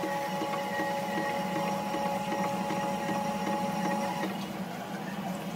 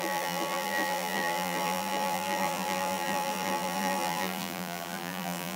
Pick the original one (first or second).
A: first